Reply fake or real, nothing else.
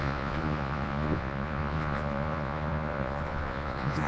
fake